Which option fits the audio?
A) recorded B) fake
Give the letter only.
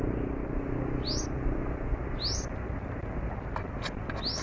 A